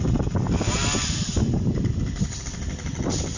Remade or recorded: recorded